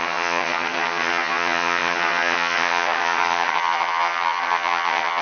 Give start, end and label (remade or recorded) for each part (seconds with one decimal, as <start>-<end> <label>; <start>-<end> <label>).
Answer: 0.0-5.2 remade